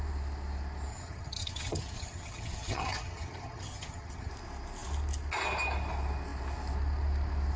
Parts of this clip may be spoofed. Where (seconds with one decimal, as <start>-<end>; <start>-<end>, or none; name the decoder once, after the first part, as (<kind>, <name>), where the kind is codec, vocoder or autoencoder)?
0.9-4.3 (vocoder, HiFi-GAN)